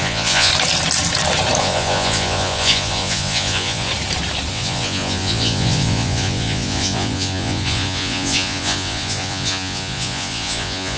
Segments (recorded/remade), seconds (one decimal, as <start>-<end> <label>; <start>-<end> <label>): 0.0-0.5 remade; 0.5-1.6 recorded; 1.6-3.9 remade; 3.9-4.5 recorded; 4.5-11.0 remade